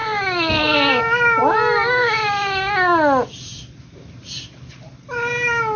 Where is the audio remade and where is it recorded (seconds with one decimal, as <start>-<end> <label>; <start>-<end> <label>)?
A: 0.0-5.8 recorded